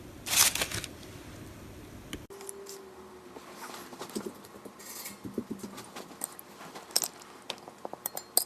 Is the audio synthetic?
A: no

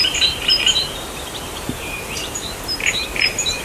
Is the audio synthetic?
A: yes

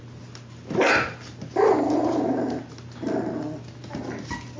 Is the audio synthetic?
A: no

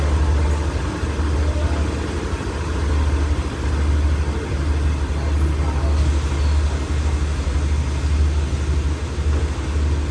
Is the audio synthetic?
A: no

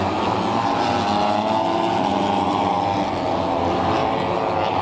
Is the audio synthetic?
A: no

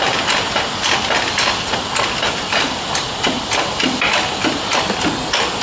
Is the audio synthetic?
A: no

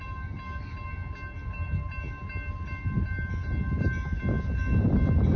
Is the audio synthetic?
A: no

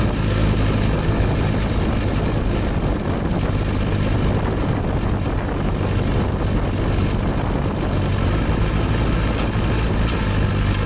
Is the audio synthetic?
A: no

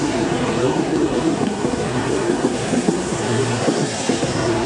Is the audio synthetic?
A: yes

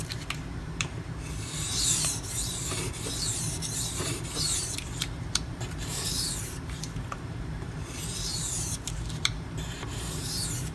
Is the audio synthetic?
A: yes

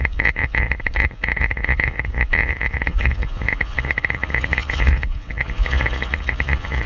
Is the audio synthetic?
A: yes